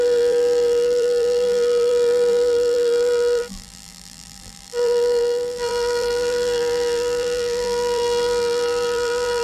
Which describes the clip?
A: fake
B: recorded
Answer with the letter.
A